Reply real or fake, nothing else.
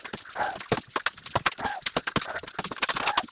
real